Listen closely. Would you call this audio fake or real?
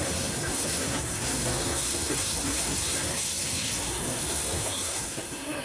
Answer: fake